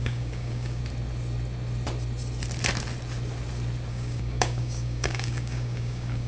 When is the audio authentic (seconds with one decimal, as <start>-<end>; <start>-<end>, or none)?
0.8-3.9

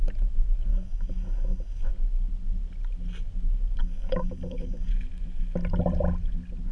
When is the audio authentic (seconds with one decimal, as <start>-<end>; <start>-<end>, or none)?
0.0-0.7; 1.9-3.8; 4.9-6.7

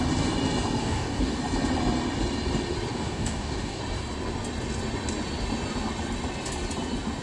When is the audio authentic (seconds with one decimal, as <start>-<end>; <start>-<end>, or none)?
0.0-0.8; 1.4-2.9; 3.8-7.2